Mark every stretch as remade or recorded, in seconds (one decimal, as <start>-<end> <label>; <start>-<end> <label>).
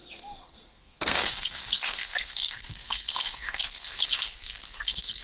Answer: 0.0-5.2 remade